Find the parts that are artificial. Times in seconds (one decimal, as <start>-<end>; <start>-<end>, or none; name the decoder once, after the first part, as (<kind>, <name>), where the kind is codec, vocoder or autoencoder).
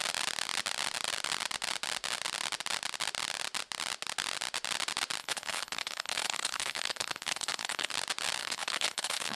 5.2-7.9 (codec, HILCodec); 8.4-9.4